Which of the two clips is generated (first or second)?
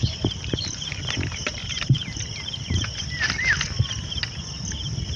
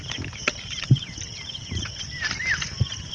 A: second